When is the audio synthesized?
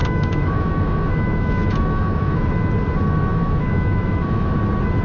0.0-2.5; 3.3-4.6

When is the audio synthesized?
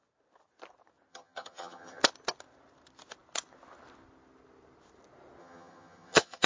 1.1-2.0; 5.4-6.5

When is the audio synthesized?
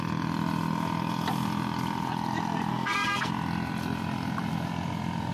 2.7-3.3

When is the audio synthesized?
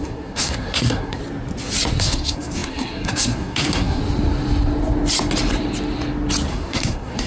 0.0-1.2; 2.0-4.0; 6.5-7.3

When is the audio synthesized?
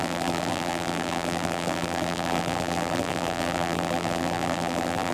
0.0-5.1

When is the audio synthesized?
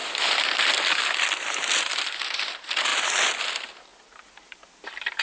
0.0-2.5; 2.9-3.4; 3.9-5.2